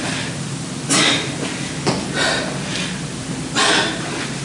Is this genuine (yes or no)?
yes